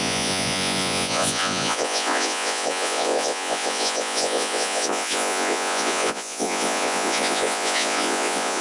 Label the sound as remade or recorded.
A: remade